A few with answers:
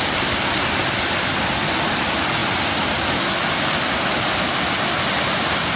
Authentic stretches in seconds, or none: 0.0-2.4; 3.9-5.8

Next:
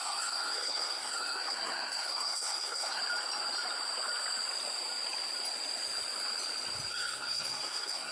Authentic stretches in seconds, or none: 3.0-6.9

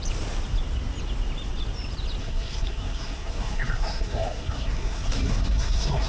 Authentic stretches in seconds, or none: 0.0-2.2

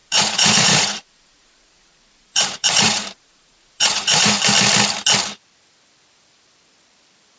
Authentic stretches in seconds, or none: 4.4-7.4

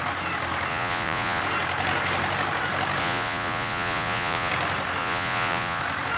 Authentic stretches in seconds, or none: 0.0-0.7; 1.4-3.0; 4.5-5.0; 5.8-6.2

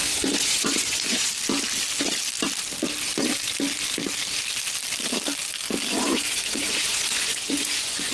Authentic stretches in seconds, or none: 1.3-6.0

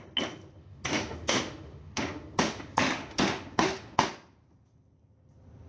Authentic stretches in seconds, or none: 0.0-0.6; 4.0-5.7

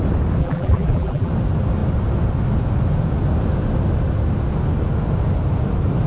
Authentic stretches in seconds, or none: 0.0-0.4; 1.3-6.1